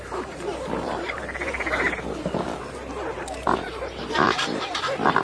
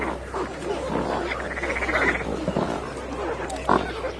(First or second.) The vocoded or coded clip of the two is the first